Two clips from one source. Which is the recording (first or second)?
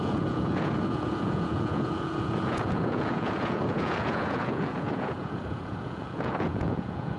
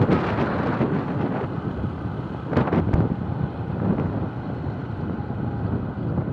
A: second